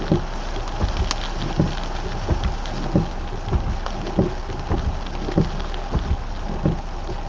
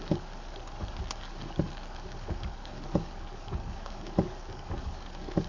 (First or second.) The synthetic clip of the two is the second